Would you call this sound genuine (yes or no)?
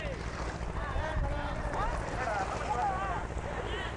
yes